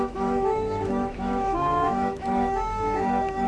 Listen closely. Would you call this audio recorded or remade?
remade